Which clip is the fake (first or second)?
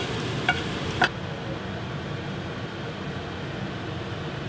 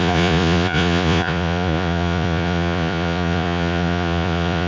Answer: second